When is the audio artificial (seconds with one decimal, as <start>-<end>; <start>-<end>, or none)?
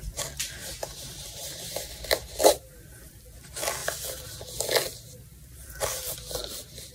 0.6-3.2